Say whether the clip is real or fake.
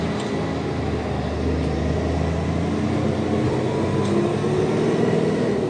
real